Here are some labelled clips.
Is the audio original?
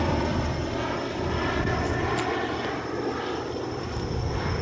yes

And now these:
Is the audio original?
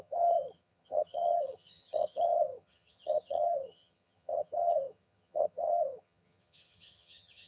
no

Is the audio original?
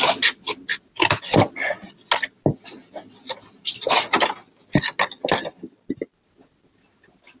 yes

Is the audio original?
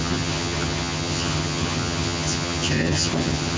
no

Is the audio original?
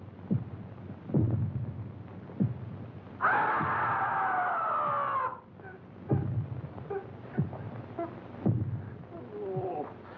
yes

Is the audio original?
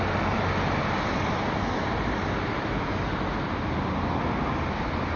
yes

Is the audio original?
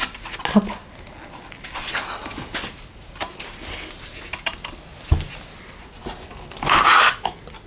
yes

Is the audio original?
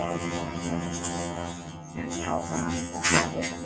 no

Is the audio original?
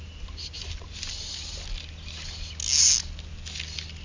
yes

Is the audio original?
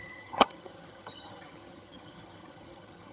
no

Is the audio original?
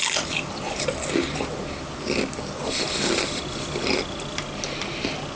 yes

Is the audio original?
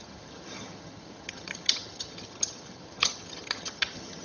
no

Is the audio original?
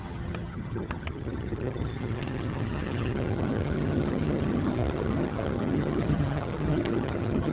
no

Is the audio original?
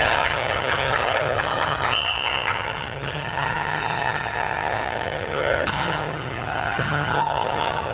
no